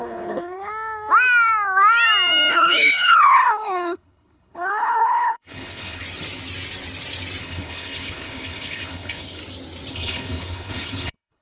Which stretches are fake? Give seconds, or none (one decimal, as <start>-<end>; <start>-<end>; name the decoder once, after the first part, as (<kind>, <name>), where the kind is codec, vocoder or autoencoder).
0.0-0.7 (codec, HILCodec); 2.5-6.0; 7.4-9.4; 9.9-11.4